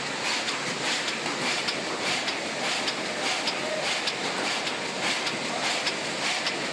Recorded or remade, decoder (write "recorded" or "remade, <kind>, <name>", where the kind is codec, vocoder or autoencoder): recorded